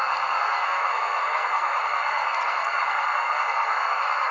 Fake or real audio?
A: fake